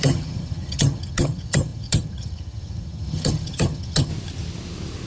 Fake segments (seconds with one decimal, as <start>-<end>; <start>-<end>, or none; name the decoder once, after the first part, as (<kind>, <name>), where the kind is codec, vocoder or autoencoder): 0.0-4.1 (vocoder, HiFi-GAN)